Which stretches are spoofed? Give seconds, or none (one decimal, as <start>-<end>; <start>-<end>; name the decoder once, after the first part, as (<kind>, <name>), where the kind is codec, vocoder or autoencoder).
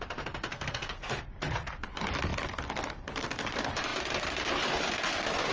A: 0.5-1.1 (codec, SNAC)